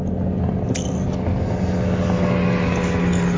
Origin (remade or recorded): recorded